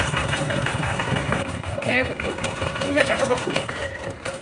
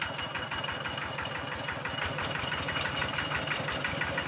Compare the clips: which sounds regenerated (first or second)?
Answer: first